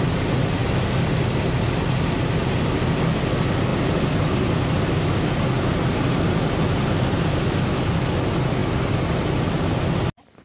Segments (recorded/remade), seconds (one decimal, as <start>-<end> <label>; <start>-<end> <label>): 0.0-10.4 recorded